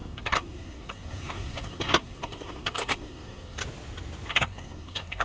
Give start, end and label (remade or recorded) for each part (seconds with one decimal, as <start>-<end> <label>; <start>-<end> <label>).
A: 0.0-3.6 remade; 3.6-4.3 recorded; 4.3-5.2 remade